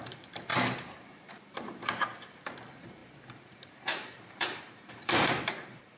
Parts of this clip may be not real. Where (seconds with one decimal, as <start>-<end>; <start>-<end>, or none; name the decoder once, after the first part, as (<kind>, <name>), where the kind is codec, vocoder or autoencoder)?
0.0-0.5 (vocoder, BigVGAN v2); 1.3-6.0